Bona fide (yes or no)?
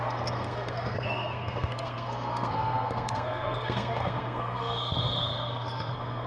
no